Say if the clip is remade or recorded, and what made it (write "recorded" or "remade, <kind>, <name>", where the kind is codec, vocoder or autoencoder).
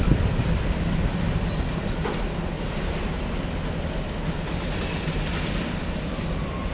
recorded